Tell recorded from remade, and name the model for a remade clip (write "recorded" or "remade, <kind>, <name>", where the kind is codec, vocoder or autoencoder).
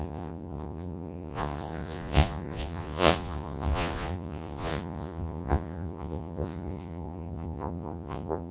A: remade, vocoder, Vocos